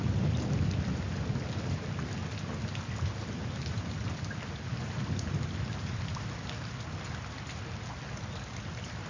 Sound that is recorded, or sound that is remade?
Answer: recorded